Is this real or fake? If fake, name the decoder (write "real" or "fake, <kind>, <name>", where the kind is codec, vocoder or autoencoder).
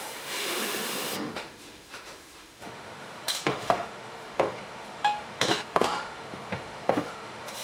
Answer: fake, autoencoder, DAC-VAE